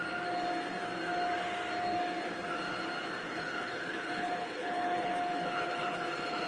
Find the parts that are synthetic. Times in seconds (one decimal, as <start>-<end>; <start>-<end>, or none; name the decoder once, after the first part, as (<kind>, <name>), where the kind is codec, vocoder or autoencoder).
3.2-6.5 (codec, HILCodec)